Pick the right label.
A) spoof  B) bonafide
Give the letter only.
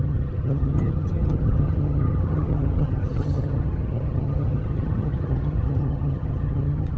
A